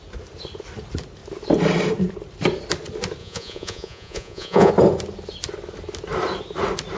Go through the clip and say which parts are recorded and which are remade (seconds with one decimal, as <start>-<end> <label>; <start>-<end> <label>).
0.0-3.2 recorded; 3.2-4.7 remade; 4.7-7.0 recorded